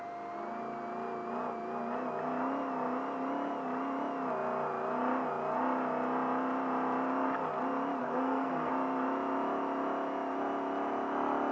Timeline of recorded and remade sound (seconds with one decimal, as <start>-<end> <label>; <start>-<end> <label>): 0.0-8.0 recorded; 8.0-8.7 remade; 8.7-11.5 recorded

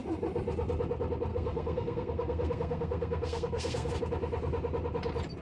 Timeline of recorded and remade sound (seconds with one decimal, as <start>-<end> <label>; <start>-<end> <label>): 0.0-1.3 recorded; 1.3-3.9 remade; 3.9-5.4 recorded

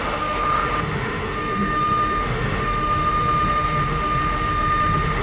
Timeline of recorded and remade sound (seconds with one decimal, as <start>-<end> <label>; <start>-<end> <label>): 0.0-5.2 remade

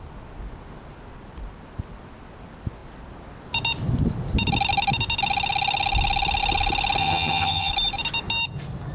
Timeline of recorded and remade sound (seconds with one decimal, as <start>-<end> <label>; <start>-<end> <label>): 0.0-7.0 recorded; 7.0-7.7 remade; 7.7-8.9 recorded

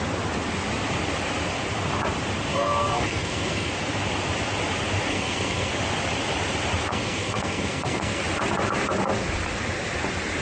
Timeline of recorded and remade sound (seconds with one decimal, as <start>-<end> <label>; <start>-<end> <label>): 0.0-2.5 recorded; 2.5-3.7 remade; 3.7-5.1 recorded; 5.1-5.7 remade; 5.7-6.9 recorded; 6.9-8.2 remade; 8.2-10.4 recorded